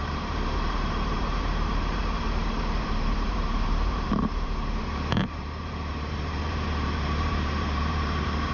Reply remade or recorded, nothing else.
remade